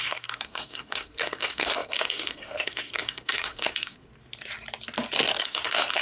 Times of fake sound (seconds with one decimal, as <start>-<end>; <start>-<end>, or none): 0.0-4.1; 5.4-6.0

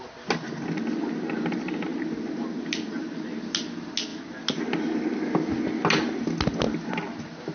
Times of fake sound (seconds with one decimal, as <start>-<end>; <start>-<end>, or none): none

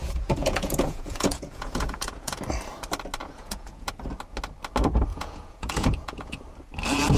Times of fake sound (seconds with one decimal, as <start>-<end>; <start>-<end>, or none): 0.0-2.4; 3.2-3.9; 5.1-6.4

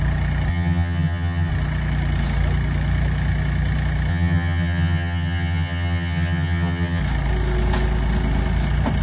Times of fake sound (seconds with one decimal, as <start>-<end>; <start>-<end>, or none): 0.5-1.5; 4.1-7.0

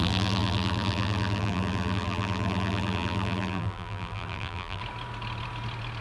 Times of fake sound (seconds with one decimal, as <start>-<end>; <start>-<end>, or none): 0.0-4.8

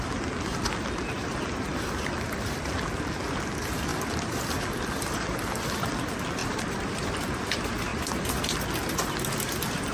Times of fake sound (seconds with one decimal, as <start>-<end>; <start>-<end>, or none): 1.7-2.6; 3.9-5.9; 6.4-7.1; 7.9-8.4